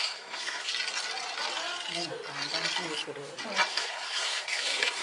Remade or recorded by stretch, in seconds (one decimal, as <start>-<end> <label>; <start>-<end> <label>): 0.0-0.7 remade; 0.7-3.7 recorded; 3.7-5.0 remade